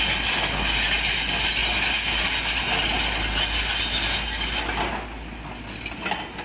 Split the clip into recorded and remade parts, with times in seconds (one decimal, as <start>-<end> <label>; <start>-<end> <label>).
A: 0.0-6.4 recorded